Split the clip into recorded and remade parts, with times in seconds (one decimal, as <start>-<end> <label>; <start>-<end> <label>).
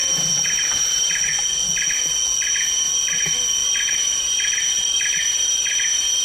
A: 0.0-1.3 remade; 1.3-3.2 recorded; 3.2-6.2 remade